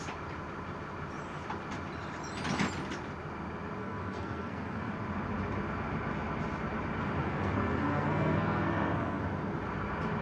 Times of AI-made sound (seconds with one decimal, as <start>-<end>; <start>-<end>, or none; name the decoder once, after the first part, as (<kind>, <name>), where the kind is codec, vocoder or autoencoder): 3.8-4.9 (codec, SNAC); 7.2-9.2